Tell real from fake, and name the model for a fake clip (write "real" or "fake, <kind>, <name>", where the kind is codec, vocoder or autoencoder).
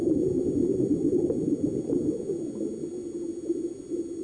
real